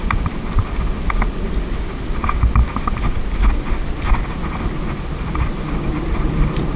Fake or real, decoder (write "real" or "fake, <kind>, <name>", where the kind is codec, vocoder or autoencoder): real